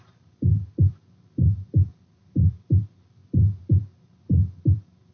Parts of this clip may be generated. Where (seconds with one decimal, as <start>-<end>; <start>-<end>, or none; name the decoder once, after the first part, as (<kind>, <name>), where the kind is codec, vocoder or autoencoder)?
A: none